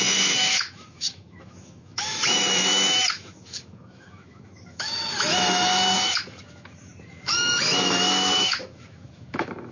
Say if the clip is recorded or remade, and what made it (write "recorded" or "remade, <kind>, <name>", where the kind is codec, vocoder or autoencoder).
remade, autoencoder, DAC-VAE